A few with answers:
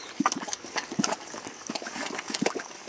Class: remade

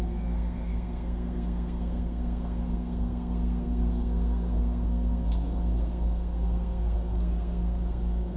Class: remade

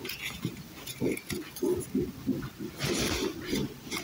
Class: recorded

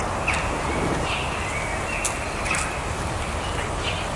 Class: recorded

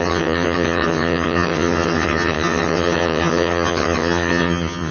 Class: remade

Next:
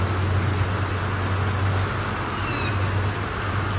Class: recorded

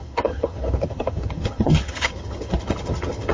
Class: remade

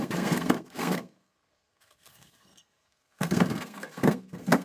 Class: remade